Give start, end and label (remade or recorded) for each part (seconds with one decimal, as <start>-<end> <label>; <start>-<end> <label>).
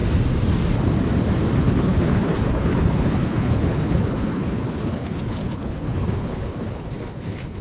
0.0-1.6 recorded; 1.6-7.6 remade